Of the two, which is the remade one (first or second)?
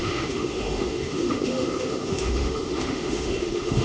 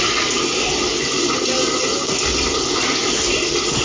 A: first